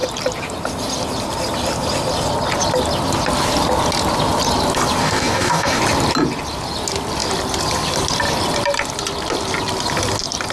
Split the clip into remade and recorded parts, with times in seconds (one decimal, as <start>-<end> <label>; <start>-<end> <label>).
0.0-5.0 recorded; 5.0-5.8 remade; 5.8-10.5 recorded